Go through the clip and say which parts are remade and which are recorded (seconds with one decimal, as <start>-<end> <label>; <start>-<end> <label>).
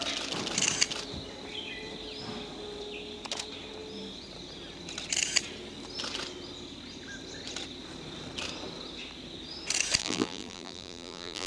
0.0-10.0 recorded; 10.0-11.5 remade